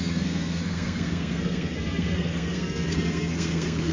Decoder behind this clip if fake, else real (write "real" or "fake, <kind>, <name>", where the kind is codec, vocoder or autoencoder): fake, codec, SNAC